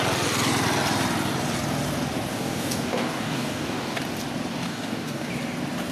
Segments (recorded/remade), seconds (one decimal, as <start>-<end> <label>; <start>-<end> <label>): 0.0-2.3 recorded; 2.3-4.0 remade; 4.0-4.5 recorded; 4.5-5.3 remade; 5.3-5.9 recorded